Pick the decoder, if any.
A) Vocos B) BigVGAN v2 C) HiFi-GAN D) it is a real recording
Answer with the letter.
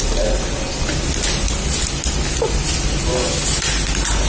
D